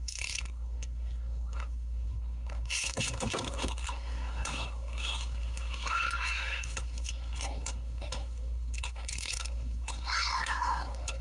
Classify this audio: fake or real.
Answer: fake